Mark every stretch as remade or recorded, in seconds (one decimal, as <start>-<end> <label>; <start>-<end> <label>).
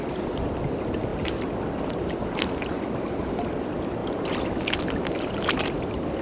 0.0-6.2 recorded